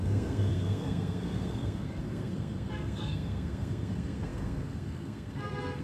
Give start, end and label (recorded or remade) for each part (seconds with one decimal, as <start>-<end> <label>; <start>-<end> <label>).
0.0-5.8 remade